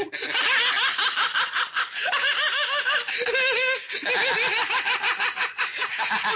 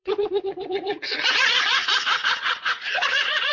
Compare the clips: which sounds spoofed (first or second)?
second